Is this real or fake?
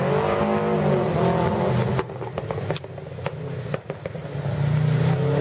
real